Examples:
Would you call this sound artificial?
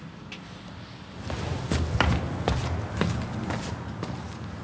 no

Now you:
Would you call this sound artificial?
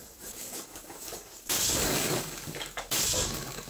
yes